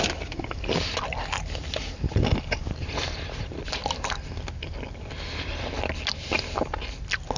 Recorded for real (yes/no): yes